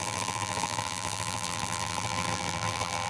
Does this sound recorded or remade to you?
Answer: remade